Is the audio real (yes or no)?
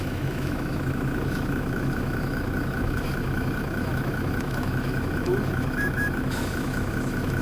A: no